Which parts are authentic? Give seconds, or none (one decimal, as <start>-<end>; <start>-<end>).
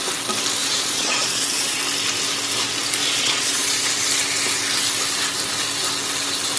0.0-0.6; 1.8-3.0; 3.9-6.6